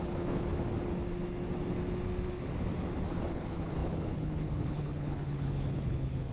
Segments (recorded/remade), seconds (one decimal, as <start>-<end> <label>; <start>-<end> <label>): 0.0-0.5 remade; 0.5-3.3 recorded; 3.3-6.3 remade